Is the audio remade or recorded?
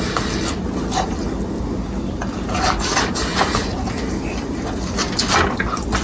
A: recorded